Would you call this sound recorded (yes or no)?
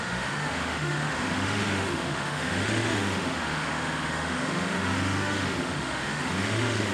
no